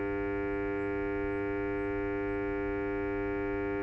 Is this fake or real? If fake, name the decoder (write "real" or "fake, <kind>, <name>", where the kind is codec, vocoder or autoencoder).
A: real